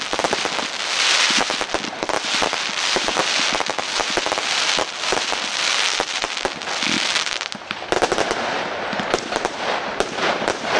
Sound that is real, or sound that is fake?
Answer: real